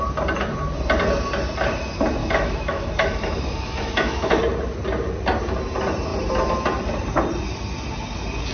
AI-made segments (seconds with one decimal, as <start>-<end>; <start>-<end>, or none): 2.2-4.4